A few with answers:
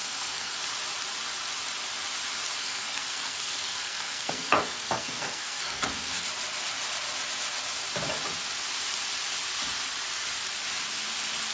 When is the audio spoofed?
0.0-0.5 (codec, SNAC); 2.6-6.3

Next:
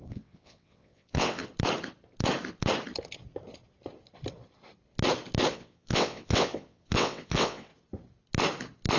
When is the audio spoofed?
0.0-1.4 (vocoder, WaveNeXt); 5.5-7.7